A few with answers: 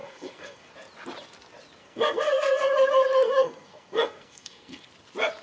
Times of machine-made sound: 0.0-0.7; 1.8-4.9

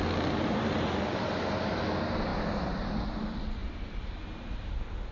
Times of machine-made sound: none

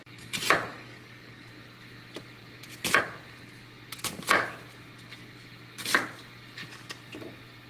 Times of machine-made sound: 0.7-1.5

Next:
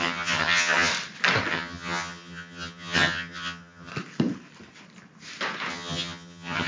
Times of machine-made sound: 0.0-0.9; 1.5-3.9; 5.7-6.7

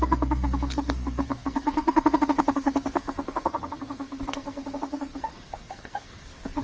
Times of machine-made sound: 0.0-6.6

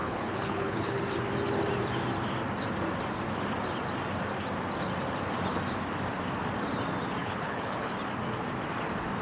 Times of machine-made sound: 0.0-1.0; 7.2-7.9

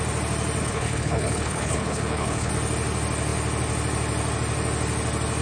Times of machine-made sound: 0.6-2.5

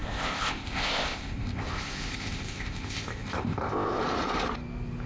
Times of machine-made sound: 0.0-4.0